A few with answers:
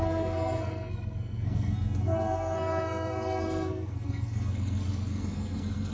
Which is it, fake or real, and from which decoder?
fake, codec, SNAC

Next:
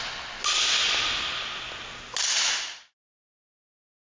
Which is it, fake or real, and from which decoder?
real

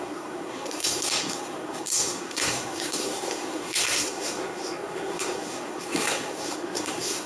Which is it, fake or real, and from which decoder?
fake, codec, SNAC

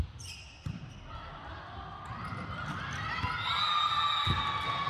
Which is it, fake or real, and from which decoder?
real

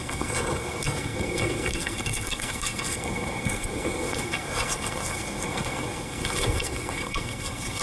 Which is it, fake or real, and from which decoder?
fake, codec, SNAC